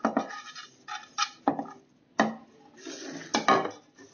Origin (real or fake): real